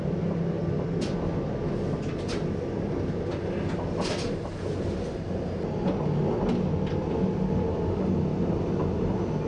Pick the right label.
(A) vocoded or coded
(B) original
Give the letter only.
B